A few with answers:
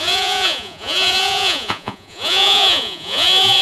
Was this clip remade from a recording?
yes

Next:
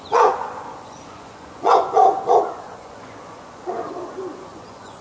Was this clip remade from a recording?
yes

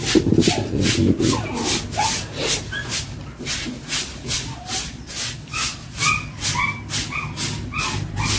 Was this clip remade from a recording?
no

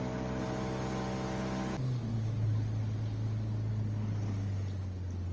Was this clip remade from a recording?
no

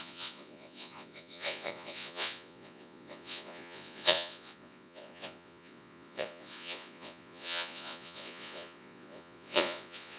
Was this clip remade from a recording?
yes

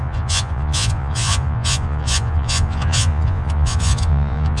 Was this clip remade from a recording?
yes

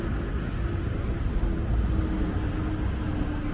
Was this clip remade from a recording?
no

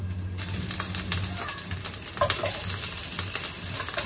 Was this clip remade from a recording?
no